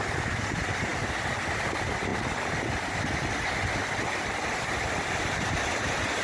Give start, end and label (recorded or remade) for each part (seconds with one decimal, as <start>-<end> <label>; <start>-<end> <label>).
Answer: 0.0-6.2 recorded

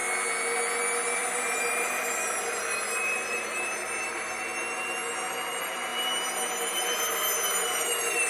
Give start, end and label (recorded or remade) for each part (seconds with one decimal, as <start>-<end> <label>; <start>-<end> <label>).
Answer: 0.0-1.2 recorded; 1.2-4.5 remade; 4.5-5.3 recorded; 5.3-8.3 remade

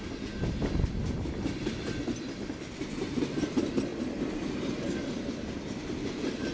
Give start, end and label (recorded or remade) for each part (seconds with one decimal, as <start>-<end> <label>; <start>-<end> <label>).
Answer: 0.0-6.5 recorded

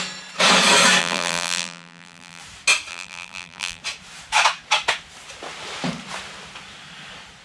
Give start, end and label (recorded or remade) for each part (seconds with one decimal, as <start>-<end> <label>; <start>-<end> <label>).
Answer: 0.0-1.0 recorded; 1.0-2.4 remade; 2.4-2.9 recorded; 2.9-3.8 remade; 3.8-7.4 recorded

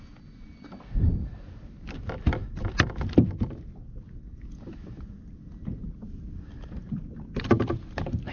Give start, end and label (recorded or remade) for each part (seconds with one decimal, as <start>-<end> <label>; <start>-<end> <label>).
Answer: 0.0-6.8 recorded; 6.8-7.6 remade; 7.6-8.3 recorded